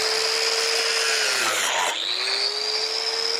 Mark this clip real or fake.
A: real